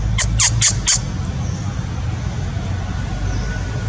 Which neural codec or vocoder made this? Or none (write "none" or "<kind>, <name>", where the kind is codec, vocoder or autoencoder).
none